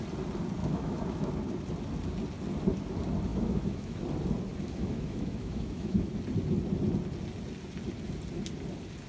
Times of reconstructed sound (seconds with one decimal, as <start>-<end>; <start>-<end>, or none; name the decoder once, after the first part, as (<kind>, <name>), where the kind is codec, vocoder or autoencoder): 0.6-1.3 (autoencoder, DAC-VAE); 3.3-4.0; 4.5-6.1